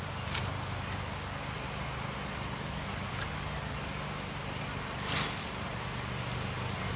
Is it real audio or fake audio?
real